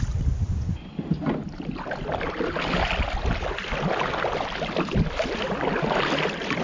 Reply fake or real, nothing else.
real